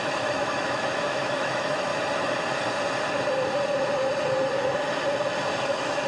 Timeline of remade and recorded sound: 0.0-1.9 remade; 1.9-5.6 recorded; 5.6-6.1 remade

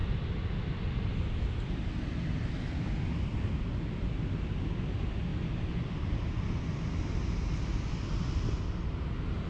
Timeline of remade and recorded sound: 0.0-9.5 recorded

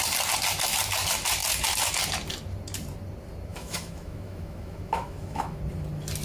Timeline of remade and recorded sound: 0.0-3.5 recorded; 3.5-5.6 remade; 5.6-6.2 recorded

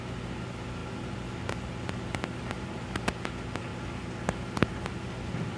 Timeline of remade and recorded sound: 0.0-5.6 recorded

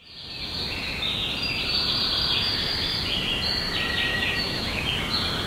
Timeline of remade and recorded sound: 0.0-4.1 recorded; 4.1-5.0 remade; 5.0-5.5 recorded

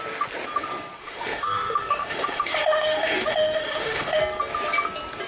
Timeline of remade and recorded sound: 0.0-1.0 recorded; 1.0-4.2 remade; 4.2-5.3 recorded

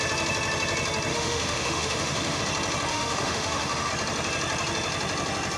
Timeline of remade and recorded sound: 0.0-1.1 recorded; 1.1-2.4 remade; 2.4-2.9 recorded; 2.9-3.9 remade; 3.9-5.6 recorded